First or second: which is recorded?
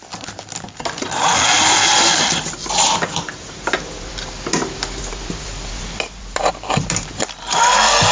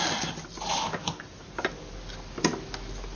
second